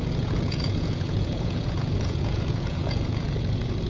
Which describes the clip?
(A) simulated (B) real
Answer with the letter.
A